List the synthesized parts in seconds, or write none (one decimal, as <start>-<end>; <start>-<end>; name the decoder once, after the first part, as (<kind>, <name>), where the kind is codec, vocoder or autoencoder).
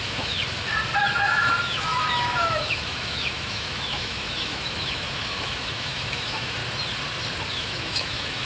0.0-0.4 (autoencoder, DAC-VAE); 1.0-6.6; 7.5-8.5